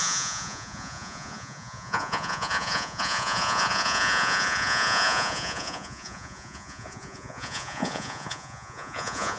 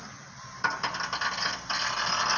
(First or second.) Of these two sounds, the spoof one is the first